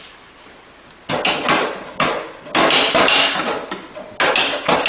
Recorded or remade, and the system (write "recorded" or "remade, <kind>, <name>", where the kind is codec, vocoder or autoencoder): recorded